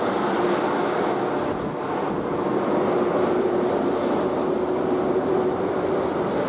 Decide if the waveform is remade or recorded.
recorded